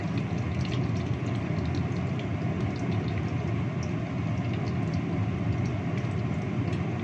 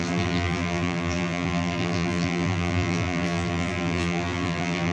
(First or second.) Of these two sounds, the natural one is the first